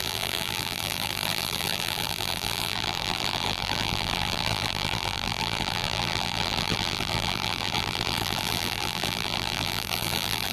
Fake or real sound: fake